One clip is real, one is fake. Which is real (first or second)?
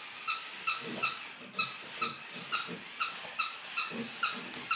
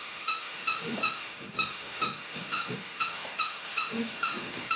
first